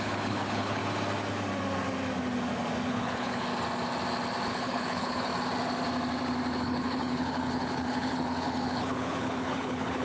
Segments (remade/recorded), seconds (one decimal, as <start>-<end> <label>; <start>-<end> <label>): 0.0-0.8 remade; 0.8-2.9 recorded; 2.9-3.5 remade; 3.5-4.5 recorded; 4.5-5.3 remade; 5.3-6.6 recorded; 6.6-10.0 remade